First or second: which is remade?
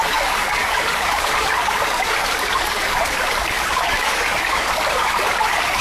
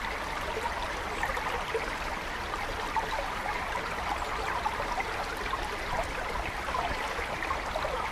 first